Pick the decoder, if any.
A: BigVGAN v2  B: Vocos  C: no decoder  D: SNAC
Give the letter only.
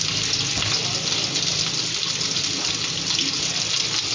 A